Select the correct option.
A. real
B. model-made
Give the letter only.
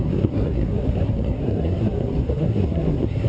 B